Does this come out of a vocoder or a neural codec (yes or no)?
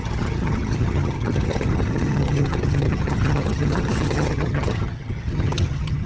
yes